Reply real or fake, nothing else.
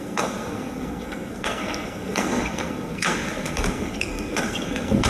fake